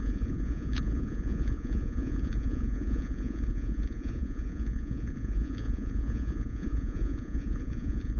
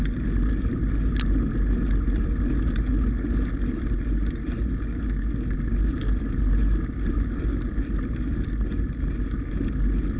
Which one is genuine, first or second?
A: second